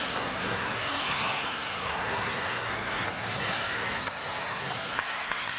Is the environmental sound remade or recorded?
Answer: remade